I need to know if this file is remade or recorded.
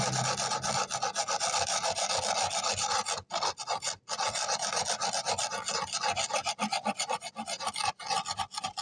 recorded